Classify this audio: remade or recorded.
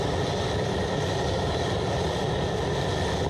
recorded